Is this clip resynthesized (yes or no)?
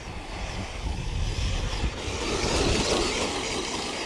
no